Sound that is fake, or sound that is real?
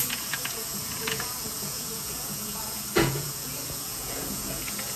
fake